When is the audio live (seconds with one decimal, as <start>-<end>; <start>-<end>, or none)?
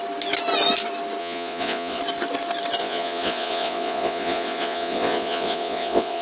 0.0-1.2; 2.0-2.8